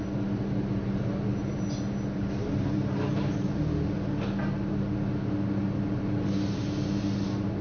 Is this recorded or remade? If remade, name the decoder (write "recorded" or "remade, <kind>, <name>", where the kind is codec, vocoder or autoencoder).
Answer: recorded